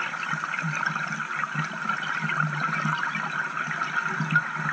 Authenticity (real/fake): real